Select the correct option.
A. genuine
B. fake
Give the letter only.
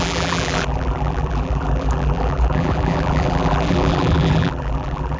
B